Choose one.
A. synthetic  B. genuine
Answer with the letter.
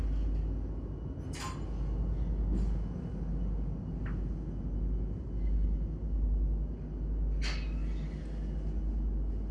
B